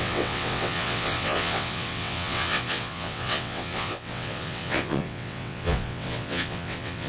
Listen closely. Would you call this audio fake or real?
fake